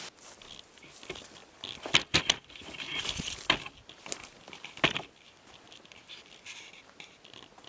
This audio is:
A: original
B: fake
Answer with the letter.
A